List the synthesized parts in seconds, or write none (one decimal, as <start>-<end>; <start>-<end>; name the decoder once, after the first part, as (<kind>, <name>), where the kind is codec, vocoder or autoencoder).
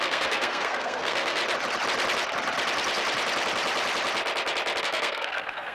0.0-1.4 (codec, SNAC); 4.8-5.7